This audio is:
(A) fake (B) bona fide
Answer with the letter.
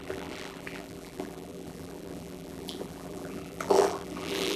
A